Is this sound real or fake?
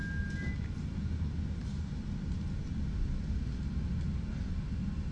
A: real